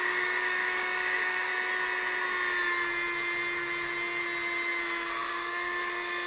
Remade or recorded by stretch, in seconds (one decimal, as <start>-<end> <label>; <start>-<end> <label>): 0.0-1.5 remade; 1.5-5.3 recorded; 5.3-6.3 remade